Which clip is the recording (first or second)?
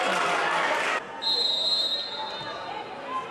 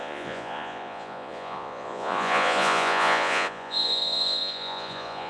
first